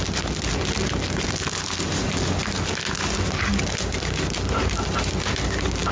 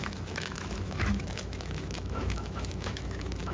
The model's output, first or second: second